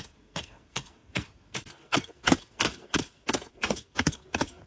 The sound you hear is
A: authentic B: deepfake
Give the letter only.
B